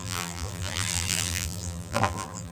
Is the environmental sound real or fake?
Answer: fake